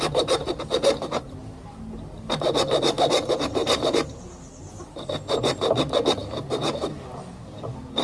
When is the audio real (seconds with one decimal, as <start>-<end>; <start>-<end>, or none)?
0.0-6.2; 6.9-8.0